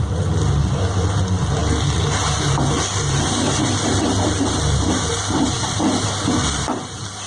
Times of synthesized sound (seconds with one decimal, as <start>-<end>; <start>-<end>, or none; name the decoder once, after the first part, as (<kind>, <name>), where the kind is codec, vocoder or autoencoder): none